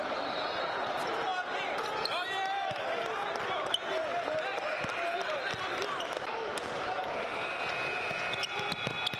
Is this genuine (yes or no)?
yes